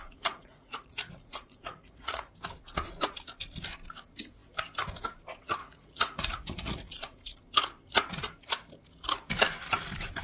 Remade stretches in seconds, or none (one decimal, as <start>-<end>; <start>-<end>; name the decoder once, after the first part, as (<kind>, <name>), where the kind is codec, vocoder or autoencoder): 0.0-2.3 (vocoder, Vocos); 5.6-7.4